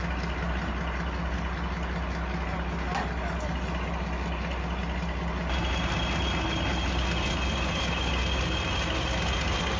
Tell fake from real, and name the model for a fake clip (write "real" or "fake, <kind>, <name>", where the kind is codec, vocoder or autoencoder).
real